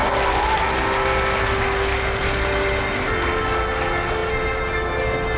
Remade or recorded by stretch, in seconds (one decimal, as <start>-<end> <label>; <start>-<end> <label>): 0.0-5.4 recorded